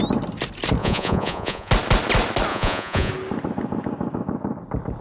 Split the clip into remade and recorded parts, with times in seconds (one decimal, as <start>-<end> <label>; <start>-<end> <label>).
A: 0.0-0.8 recorded; 0.8-1.7 remade; 1.7-2.5 recorded; 2.5-3.1 remade; 3.1-5.0 recorded